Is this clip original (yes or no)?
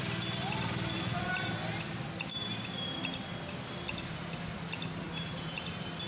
yes